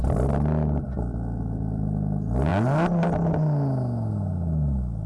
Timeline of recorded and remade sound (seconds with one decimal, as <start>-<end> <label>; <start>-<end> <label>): 0.0-5.1 recorded